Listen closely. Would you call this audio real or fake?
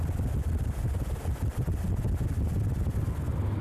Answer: real